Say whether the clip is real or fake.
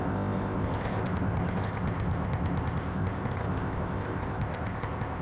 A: fake